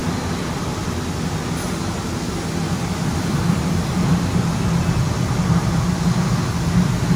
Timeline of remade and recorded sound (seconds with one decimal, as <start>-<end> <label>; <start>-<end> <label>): 0.0-7.2 recorded

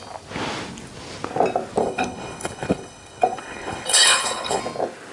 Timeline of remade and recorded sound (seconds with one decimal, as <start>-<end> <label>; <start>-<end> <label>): 0.0-1.8 recorded; 1.8-4.6 remade; 4.6-5.1 recorded

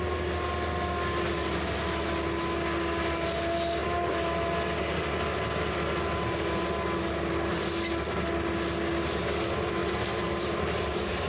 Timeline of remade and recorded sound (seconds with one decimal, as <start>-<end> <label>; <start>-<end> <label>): 0.0-9.8 recorded; 9.8-11.3 remade

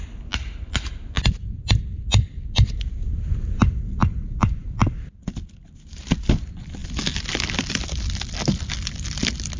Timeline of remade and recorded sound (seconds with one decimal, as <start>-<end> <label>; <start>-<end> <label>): 0.0-9.6 recorded

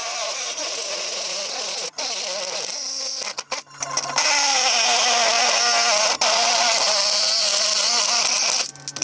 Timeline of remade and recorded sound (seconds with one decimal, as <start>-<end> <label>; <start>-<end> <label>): 0.0-2.0 remade; 2.0-9.0 recorded